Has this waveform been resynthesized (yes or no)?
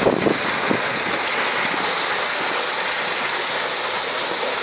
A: no